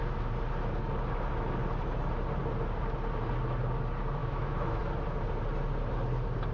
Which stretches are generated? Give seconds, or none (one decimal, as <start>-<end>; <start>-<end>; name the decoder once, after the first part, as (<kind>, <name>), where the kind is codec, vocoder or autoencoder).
4.2-4.8 (autoencoder, DAC-VAE)